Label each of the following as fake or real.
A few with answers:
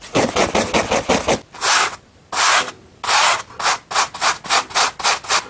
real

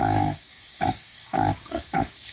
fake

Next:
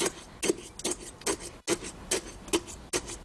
real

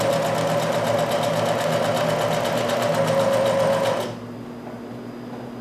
real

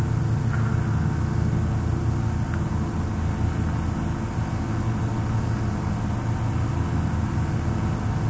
real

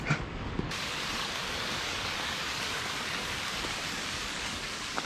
fake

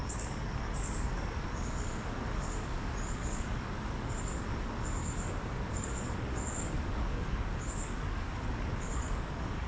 fake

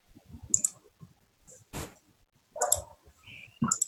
real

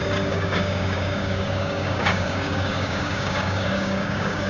fake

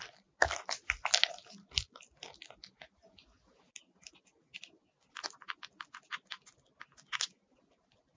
real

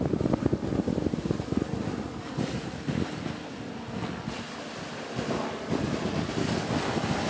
real